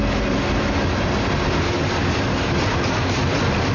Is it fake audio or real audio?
real